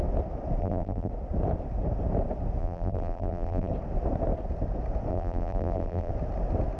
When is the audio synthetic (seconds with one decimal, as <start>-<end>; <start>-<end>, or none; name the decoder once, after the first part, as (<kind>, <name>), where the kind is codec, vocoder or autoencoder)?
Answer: 0.6-1.1 (vocoder, BigVGAN v2); 2.6-3.7; 5.1-6.1